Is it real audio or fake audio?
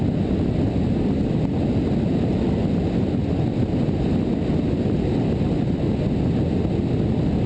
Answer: real